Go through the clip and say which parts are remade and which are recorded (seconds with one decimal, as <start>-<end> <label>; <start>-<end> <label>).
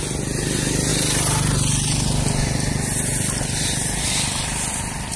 0.0-5.2 recorded